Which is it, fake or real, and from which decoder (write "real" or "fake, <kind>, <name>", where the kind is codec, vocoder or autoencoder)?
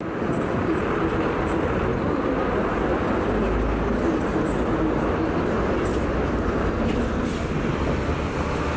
real